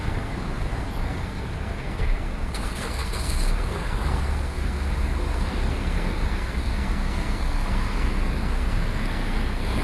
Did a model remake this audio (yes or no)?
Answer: yes